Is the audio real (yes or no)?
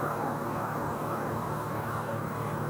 no